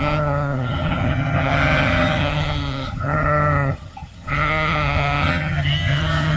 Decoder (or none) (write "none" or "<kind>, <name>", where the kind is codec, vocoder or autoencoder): vocoder, HiFi-GAN